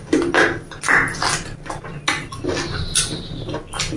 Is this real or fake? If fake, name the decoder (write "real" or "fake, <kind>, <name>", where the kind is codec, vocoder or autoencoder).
real